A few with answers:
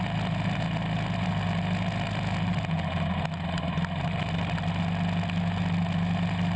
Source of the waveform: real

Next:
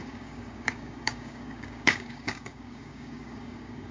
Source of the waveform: fake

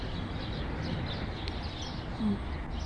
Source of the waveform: real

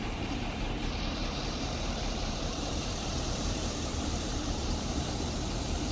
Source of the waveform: fake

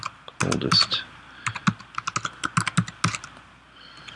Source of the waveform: real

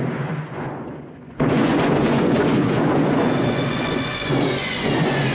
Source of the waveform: fake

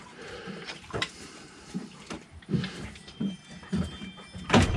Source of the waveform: fake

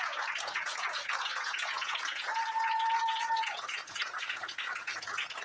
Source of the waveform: fake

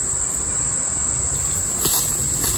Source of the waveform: real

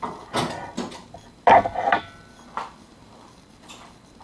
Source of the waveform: real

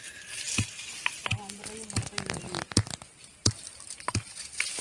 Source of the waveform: real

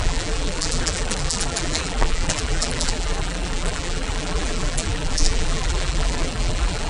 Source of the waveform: fake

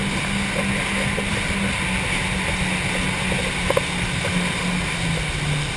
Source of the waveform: real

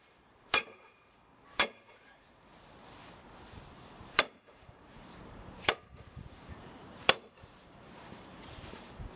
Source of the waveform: fake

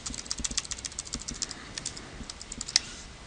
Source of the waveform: real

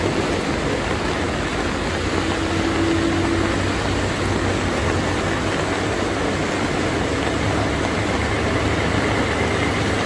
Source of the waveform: real